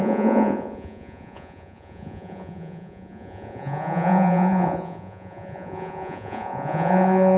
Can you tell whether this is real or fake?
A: fake